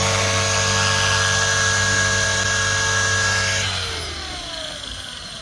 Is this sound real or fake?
real